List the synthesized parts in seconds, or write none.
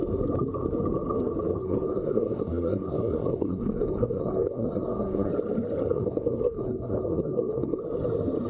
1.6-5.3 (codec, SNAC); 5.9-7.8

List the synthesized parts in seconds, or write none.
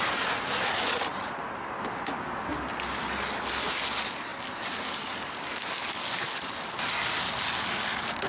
none